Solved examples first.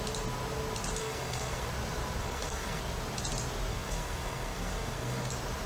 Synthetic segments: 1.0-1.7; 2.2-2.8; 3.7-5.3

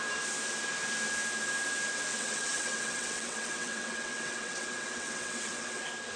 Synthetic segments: 2.1-5.8